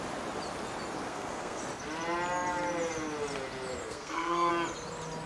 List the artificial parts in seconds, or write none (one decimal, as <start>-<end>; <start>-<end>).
1.1-1.6; 3.8-4.5